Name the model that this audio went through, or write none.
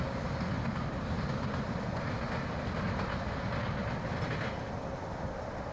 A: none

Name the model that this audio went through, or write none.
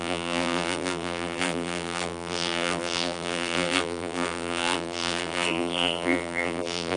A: vocoder, BigVGAN v2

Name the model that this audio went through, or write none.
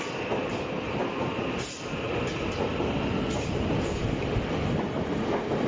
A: none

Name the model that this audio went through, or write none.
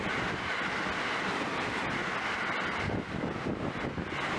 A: none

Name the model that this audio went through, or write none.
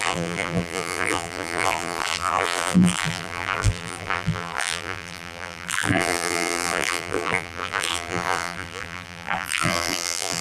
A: vocoder, BigVGAN v2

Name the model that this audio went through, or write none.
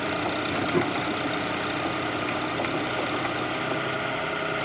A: none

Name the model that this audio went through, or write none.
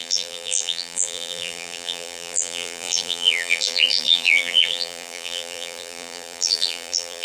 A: vocoder, BigVGAN v2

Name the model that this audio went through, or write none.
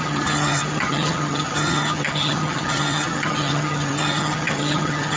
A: vocoder, HiFi-GAN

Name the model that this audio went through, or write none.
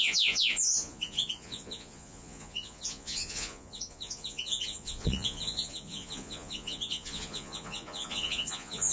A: vocoder, Vocos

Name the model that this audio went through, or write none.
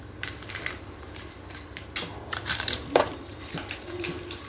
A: vocoder, BigVGAN v2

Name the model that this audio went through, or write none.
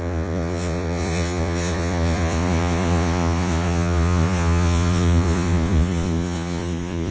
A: vocoder, Vocos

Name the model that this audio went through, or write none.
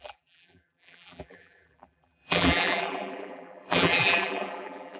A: vocoder, BigVGAN v2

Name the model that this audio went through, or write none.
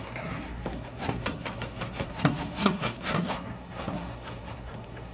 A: codec, SNAC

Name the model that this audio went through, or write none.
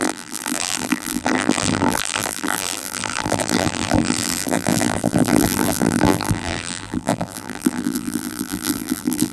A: vocoder, BigVGAN v2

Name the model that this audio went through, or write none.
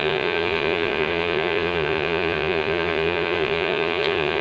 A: vocoder, Vocos